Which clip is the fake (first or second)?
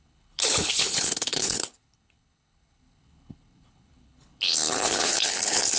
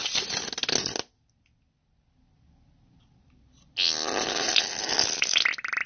first